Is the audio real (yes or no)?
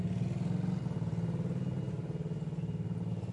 yes